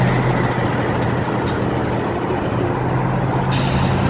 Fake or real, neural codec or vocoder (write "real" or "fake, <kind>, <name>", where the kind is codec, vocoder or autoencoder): real